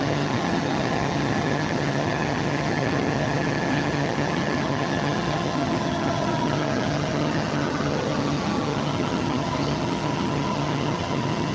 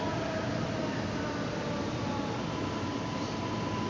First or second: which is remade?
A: first